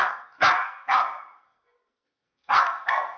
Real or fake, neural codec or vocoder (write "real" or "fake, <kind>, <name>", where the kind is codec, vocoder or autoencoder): fake, codec, SNAC